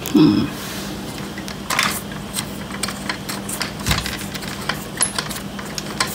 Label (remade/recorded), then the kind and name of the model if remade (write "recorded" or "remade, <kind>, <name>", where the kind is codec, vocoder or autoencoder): recorded